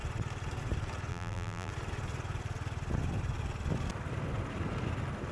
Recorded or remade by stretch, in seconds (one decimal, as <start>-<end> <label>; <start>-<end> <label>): 0.0-1.1 recorded; 1.1-1.7 remade; 1.7-5.3 recorded